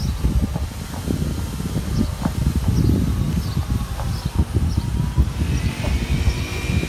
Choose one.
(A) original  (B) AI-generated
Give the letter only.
A